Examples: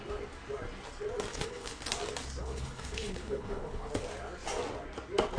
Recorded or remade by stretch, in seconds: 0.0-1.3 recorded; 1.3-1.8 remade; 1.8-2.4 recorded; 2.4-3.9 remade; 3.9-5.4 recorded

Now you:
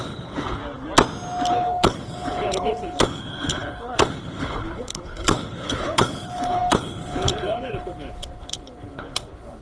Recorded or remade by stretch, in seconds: 0.0-0.6 remade; 0.6-1.5 recorded; 1.5-9.6 remade

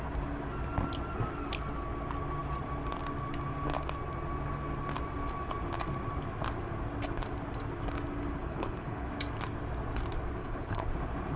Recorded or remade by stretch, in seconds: 0.0-8.4 recorded; 8.4-9.1 remade; 9.1-10.4 recorded; 10.4-10.9 remade; 10.9-11.4 recorded

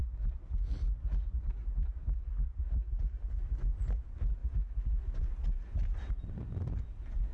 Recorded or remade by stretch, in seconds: 0.0-7.3 recorded

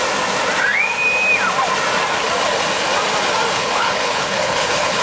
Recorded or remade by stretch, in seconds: 0.0-3.6 recorded; 3.6-5.0 remade

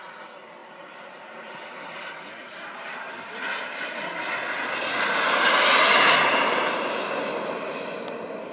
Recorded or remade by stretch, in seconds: 0.0-8.5 recorded

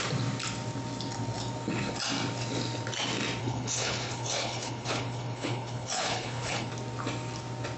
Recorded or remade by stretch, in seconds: 0.0-3.4 recorded; 3.4-6.7 remade; 6.7-7.8 recorded

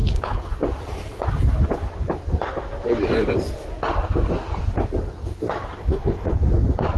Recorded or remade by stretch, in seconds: 0.0-0.5 remade; 0.5-5.8 recorded; 5.8-6.3 remade; 6.3-7.0 recorded